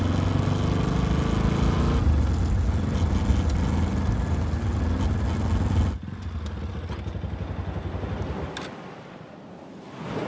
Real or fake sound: real